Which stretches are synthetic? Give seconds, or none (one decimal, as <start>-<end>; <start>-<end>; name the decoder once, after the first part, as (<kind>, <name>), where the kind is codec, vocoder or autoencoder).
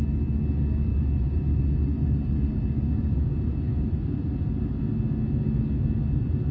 0.9-4.8 (vocoder, BigVGAN v2)